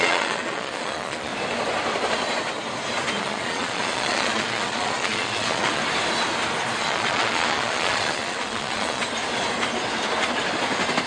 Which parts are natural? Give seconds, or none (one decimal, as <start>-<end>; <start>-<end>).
1.3-3.2; 5.8-6.8; 9.0-11.1